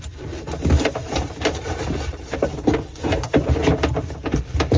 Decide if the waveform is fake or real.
fake